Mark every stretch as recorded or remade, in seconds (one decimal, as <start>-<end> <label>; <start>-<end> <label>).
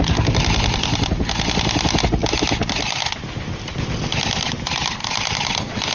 0.0-5.9 recorded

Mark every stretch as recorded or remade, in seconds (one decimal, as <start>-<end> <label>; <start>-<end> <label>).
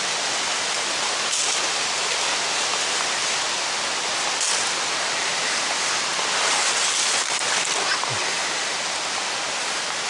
0.0-10.1 recorded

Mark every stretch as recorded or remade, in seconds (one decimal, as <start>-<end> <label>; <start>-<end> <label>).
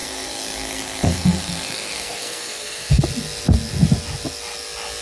0.0-3.0 remade; 3.0-5.0 recorded